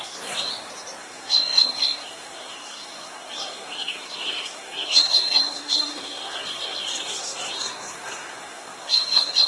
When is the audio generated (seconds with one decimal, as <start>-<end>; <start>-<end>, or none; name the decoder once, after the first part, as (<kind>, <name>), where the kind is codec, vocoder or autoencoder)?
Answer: 0.0-0.5 (codec, SNAC); 1.0-9.5